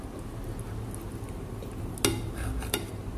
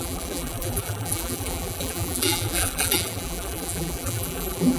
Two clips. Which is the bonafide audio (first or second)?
first